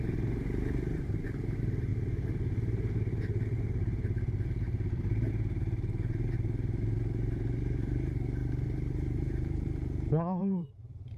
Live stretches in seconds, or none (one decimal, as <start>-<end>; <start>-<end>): 1.9-5.3